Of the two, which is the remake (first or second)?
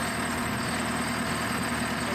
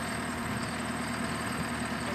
second